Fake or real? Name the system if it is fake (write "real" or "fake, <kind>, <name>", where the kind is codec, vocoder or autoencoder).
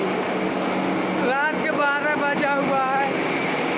real